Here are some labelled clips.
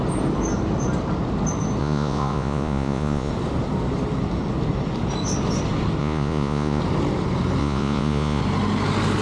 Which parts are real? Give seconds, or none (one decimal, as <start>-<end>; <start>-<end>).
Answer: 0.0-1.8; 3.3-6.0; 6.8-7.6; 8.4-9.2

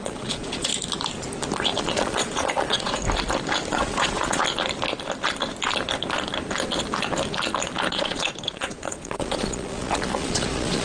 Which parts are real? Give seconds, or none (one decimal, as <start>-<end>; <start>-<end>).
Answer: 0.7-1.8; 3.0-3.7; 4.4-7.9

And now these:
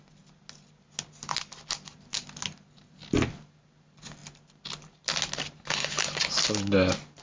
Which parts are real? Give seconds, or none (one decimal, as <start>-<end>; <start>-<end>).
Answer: 0.0-7.2

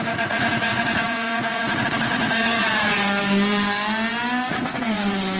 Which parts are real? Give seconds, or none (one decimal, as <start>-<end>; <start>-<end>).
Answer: 3.2-4.5